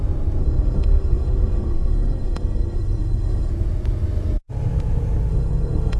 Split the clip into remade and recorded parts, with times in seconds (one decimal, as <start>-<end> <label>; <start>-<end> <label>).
0.0-0.4 recorded; 0.4-3.5 remade; 3.5-5.3 recorded; 5.3-6.0 remade